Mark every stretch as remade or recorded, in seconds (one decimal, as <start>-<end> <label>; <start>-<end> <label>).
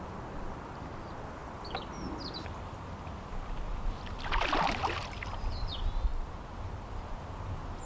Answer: 0.0-7.9 recorded